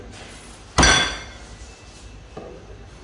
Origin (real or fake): real